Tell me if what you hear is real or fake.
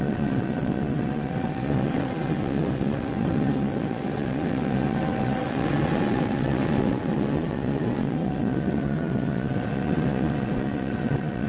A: fake